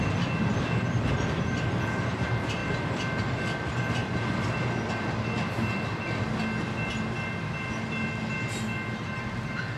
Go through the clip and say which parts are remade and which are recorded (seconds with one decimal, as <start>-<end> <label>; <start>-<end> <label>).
0.0-9.8 recorded